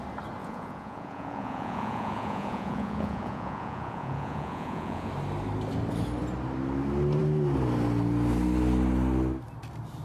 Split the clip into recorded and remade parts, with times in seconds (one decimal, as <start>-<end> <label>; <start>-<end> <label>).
0.0-0.4 recorded; 0.4-5.1 remade; 5.1-10.0 recorded